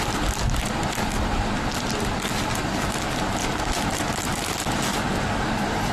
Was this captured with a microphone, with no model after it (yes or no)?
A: yes